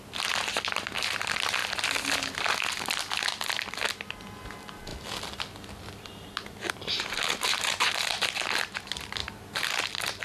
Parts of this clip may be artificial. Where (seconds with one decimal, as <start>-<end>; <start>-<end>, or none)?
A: 1.6-3.5; 9.2-10.2